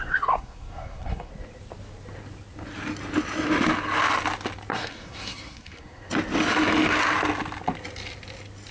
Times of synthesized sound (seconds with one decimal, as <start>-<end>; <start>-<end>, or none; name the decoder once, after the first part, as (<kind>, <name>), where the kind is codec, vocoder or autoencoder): 0.0-1.3 (codec, SNAC); 4.7-6.1